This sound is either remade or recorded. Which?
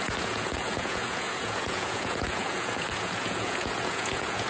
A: remade